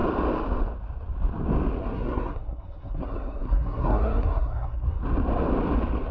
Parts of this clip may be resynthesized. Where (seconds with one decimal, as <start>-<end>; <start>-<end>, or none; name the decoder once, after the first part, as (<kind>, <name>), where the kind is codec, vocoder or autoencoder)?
1.8-5.0 (codec, SNAC)